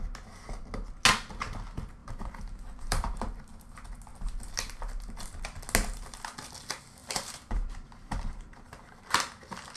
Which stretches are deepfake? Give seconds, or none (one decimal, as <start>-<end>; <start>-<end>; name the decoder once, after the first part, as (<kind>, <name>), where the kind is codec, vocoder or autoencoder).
2.0-3.2 (vocoder, BigVGAN v2); 7.0-9.0